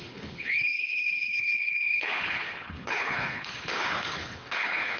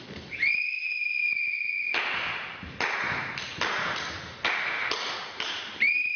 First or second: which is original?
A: second